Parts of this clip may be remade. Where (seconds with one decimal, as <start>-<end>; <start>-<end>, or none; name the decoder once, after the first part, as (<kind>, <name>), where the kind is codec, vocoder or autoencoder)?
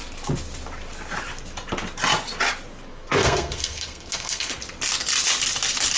2.9-4.5 (codec, SNAC)